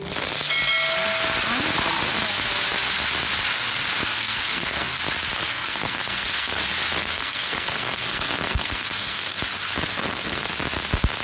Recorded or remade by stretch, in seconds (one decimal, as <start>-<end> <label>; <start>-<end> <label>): 0.0-4.0 recorded; 4.0-5.0 remade; 5.0-5.4 recorded; 5.4-6.6 remade; 6.6-7.0 recorded; 7.0-9.4 remade; 9.4-10.0 recorded; 10.0-10.5 remade; 10.5-11.2 recorded